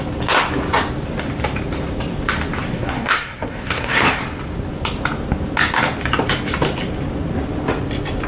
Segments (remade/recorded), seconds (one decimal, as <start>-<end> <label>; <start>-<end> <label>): 0.0-2.7 recorded; 2.7-4.2 remade; 4.2-8.3 recorded